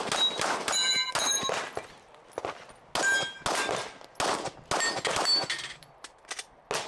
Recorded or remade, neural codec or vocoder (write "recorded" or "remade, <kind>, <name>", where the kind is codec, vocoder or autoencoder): recorded